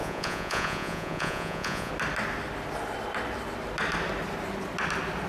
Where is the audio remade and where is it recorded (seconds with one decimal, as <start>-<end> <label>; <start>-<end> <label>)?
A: 0.0-1.9 remade; 1.9-5.3 recorded